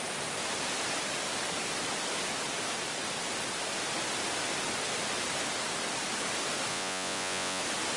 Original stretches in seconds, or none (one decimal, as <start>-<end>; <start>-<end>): 0.0-6.7; 7.6-8.0